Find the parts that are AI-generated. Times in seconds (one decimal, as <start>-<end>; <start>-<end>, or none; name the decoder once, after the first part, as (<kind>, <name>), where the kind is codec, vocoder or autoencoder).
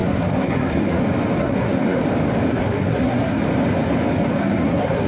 0.0-1.0 (codec, SNAC); 1.4-2.0; 2.5-3.4; 4.4-5.1